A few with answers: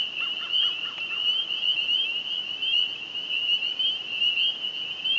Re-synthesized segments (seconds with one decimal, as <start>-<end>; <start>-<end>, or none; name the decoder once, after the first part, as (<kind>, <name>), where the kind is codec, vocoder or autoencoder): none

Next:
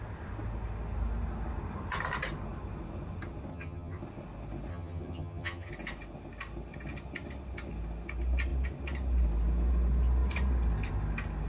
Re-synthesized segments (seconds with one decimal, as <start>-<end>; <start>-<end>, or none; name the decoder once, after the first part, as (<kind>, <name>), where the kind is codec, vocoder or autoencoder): 3.5-4.0 (vocoder, HiFi-GAN); 4.7-5.7

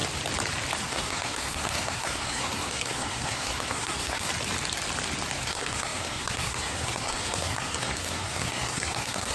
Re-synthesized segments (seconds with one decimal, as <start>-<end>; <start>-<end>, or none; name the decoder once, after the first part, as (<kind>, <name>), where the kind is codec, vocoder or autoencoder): 0.8-4.3 (codec, SNAC); 5.4-9.3